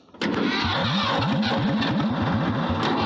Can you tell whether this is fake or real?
real